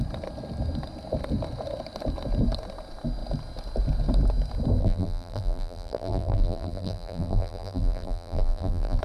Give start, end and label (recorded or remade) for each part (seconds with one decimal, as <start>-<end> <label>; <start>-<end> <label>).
0.0-4.8 recorded; 4.8-9.0 remade